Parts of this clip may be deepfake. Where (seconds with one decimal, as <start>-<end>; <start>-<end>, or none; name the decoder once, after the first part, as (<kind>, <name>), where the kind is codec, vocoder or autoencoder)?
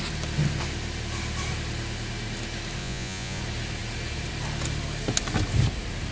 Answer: 2.8-3.4 (vocoder, Vocos)